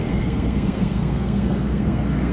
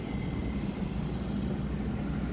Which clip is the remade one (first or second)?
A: first